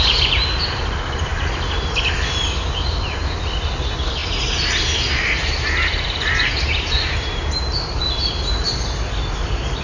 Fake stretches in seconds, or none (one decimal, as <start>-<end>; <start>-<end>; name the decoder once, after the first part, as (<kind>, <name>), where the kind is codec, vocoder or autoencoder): 4.2-8.3 (vocoder, BigVGAN v2)